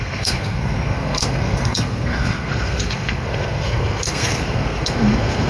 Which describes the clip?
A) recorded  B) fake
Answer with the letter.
B